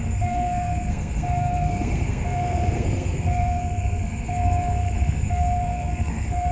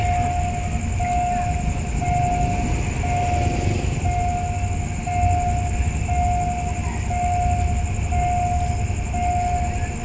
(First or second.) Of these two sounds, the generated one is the first